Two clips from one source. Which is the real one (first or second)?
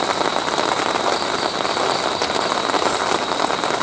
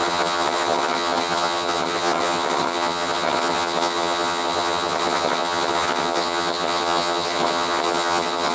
first